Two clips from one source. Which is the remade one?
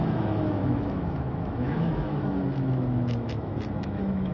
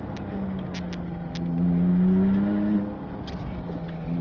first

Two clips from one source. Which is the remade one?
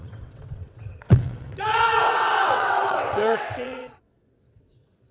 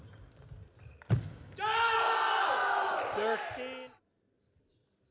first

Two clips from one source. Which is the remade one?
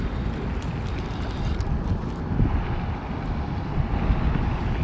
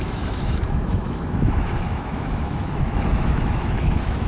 second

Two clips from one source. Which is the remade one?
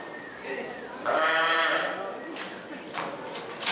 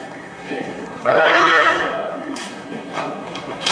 second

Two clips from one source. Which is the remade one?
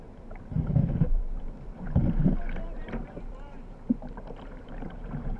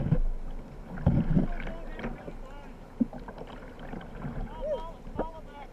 first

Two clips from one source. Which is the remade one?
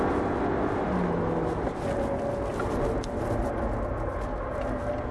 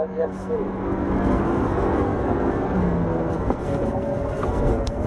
second